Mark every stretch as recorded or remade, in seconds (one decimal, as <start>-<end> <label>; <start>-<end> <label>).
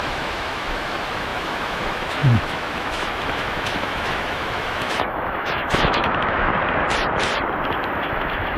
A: 0.0-6.5 remade; 6.5-8.0 recorded; 8.0-8.6 remade